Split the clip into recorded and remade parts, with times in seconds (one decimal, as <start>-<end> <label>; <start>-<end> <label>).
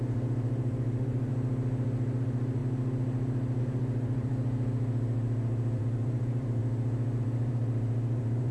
0.0-1.3 remade; 1.3-2.2 recorded; 2.2-2.6 remade; 2.6-3.6 recorded; 3.6-4.3 remade; 4.3-5.8 recorded; 5.8-6.6 remade; 6.6-7.2 recorded; 7.2-8.5 remade